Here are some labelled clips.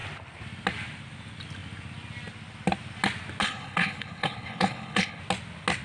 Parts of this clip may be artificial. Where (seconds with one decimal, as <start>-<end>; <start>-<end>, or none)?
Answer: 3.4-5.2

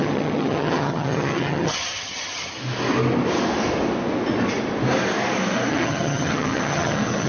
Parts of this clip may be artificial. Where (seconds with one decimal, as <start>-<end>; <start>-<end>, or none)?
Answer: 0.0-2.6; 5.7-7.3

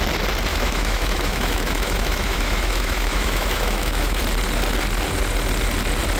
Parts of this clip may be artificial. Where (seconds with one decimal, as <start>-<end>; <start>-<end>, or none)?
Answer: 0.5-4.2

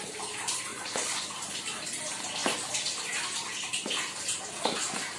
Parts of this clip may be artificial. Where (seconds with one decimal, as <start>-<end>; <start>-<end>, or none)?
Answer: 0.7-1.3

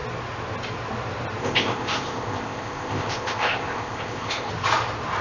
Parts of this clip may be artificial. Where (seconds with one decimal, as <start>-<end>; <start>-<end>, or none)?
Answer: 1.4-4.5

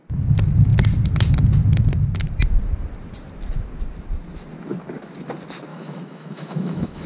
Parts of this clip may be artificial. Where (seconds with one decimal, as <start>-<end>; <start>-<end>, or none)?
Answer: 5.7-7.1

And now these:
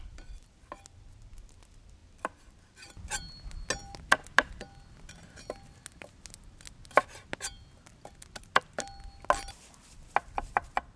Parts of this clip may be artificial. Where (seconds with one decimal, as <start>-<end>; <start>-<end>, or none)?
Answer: none

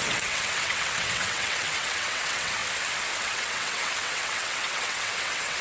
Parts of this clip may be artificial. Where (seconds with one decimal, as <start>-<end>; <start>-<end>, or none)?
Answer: 0.0-2.6; 3.2-5.6